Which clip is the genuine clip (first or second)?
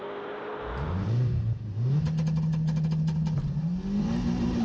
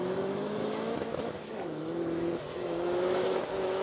first